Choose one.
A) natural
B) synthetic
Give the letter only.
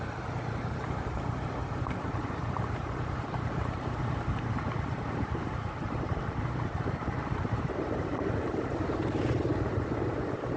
B